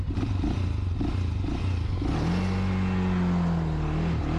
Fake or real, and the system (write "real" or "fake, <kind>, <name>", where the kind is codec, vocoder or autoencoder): real